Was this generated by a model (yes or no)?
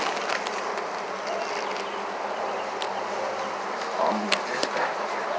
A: no